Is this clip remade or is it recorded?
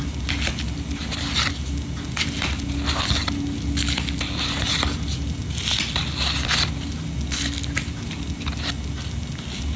recorded